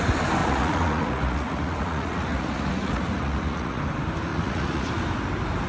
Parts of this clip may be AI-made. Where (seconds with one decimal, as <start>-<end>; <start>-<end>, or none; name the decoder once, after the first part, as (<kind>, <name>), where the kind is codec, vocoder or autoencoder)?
0.4-3.8 (vocoder, Vocos); 4.3-4.9